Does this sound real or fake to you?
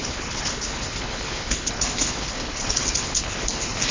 fake